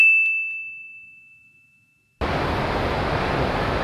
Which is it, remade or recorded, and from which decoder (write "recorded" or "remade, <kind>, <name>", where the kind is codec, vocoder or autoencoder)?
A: recorded